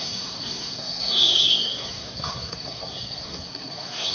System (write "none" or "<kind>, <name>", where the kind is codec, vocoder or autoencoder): codec, SNAC